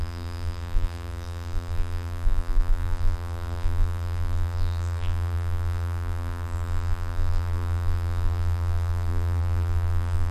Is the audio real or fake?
fake